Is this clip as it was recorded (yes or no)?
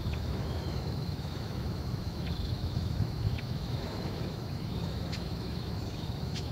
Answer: no